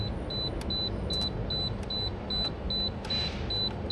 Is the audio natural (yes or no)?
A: yes